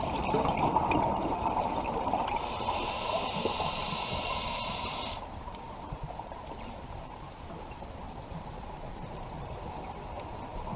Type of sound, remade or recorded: remade